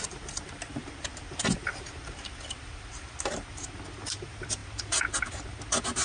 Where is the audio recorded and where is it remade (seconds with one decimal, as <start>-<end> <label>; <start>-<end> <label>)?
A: 0.0-4.6 remade; 4.6-5.3 recorded; 5.3-6.0 remade